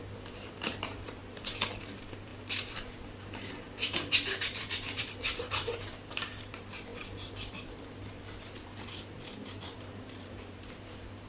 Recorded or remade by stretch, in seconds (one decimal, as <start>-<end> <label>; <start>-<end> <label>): 0.0-1.2 remade; 1.2-1.8 recorded; 1.8-11.3 remade